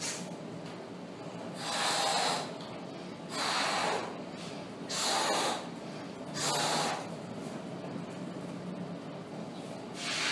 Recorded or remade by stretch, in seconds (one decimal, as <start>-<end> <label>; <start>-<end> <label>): 0.0-10.3 recorded

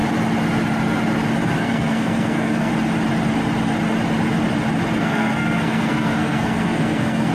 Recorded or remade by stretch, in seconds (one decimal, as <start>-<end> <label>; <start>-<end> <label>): 0.0-1.6 recorded; 1.6-2.7 remade; 2.7-5.0 recorded; 5.0-7.3 remade

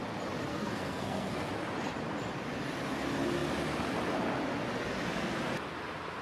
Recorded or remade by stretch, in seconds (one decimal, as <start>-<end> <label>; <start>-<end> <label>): 0.0-0.5 recorded; 0.5-1.5 remade; 1.5-6.2 recorded

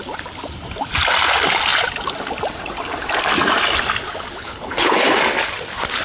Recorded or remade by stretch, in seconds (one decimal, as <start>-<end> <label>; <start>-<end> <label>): 0.0-4.4 recorded; 4.4-5.2 remade; 5.2-6.0 recorded

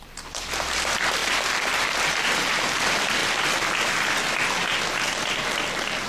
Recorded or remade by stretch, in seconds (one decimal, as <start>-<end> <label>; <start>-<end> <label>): 0.0-3.2 remade; 3.2-5.2 recorded; 5.2-6.1 remade

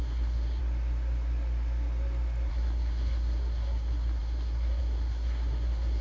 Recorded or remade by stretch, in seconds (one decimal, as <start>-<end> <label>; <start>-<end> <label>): 0.0-0.6 remade; 0.6-2.5 recorded; 2.5-6.0 remade